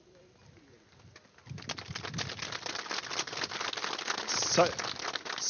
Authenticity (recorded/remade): recorded